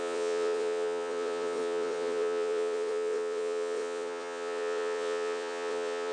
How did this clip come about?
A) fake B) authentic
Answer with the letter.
A